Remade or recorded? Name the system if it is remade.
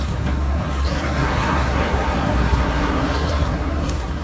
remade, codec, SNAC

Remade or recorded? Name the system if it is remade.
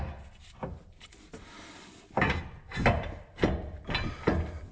recorded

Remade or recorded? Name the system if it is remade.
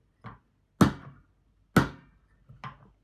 recorded